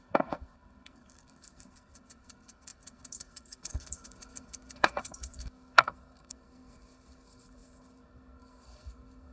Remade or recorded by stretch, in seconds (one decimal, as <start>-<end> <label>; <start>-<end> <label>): 0.0-9.3 remade